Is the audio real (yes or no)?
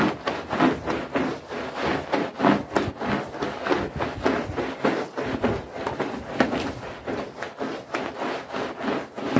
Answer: yes